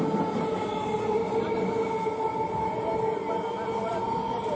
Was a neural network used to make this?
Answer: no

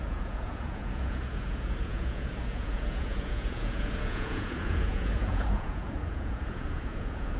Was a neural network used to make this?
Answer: yes